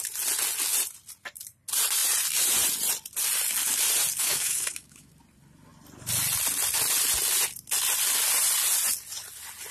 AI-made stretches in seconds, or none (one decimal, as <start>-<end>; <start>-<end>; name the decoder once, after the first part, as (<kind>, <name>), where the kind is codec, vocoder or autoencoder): 4.2-5.1 (autoencoder, DAC-VAE)